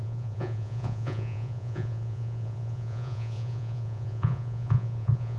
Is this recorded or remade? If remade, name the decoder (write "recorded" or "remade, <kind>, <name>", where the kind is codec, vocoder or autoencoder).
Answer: remade, vocoder, Vocos